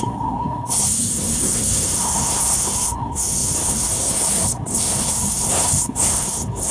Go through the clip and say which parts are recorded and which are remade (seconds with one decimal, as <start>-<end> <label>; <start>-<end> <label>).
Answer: 0.0-6.7 remade